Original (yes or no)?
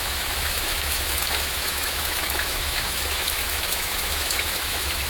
no